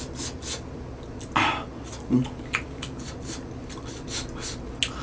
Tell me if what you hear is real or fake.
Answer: real